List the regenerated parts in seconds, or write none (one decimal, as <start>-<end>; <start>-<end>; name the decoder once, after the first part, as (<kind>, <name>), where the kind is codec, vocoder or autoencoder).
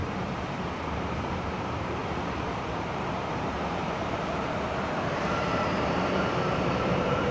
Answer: 0.0-2.0 (vocoder, BigVGAN v2); 2.7-7.3